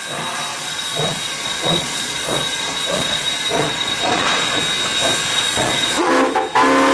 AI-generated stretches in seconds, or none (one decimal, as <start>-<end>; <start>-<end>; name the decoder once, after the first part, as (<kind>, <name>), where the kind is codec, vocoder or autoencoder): 0.5-4.6 (vocoder, Vocos); 5.3-6.1